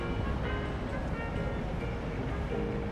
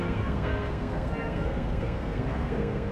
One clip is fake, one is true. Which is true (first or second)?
first